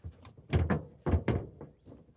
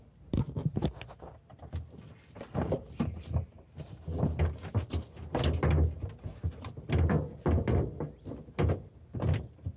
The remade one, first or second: first